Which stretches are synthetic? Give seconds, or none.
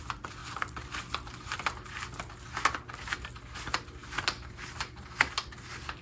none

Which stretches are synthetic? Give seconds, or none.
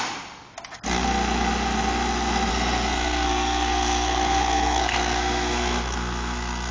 2.5-6.7 (codec, SNAC)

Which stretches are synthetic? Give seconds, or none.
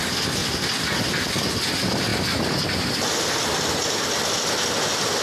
none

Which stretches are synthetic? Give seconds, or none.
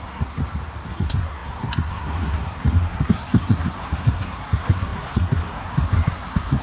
0.0-0.4 (codec, SNAC); 0.9-6.6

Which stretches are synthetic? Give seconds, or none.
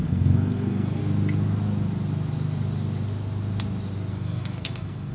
0.0-1.0 (codec, SNAC); 4.1-5.1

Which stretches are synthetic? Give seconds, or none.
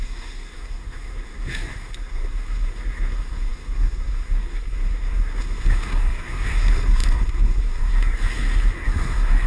0.0-9.5 (codec, SNAC)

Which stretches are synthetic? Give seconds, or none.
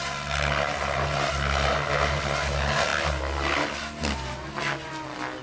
none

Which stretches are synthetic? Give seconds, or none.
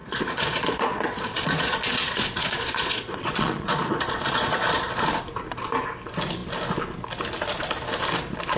0.0-5.2 (vocoder, Vocos)